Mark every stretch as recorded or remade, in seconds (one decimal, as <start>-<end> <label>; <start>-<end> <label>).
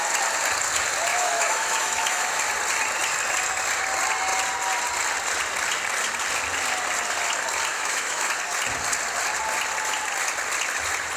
0.0-1.1 recorded; 1.1-2.4 remade; 2.4-7.7 recorded; 7.7-8.3 remade; 8.3-11.2 recorded